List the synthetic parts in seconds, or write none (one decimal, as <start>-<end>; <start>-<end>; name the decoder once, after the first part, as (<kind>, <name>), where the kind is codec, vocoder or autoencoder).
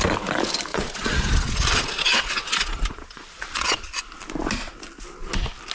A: 0.7-3.9 (vocoder, Vocos)